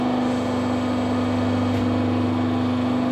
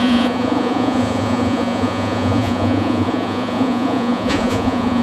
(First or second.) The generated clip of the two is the second